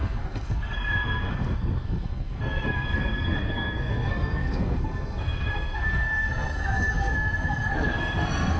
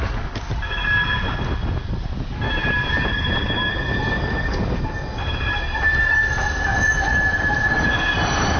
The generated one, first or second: first